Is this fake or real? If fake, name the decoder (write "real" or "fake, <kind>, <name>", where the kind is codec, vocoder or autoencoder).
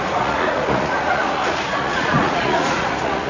fake, vocoder, Vocos